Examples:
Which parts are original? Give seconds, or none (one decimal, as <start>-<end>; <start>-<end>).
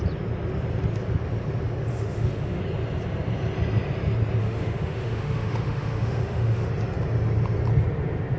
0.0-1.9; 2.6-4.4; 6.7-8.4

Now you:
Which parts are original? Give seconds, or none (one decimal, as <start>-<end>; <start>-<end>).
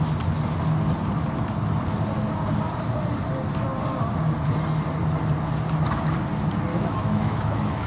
0.0-6.7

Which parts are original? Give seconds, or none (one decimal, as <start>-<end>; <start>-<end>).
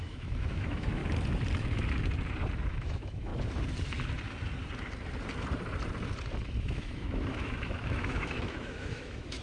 1.0-2.7; 3.3-6.6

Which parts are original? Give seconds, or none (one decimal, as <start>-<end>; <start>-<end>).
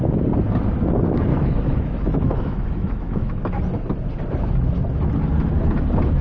0.0-1.3; 3.6-6.2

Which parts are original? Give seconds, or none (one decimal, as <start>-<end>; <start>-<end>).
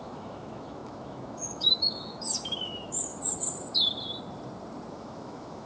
3.1-4.9